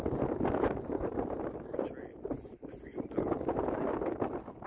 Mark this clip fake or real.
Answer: real